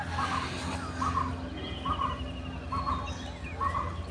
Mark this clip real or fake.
real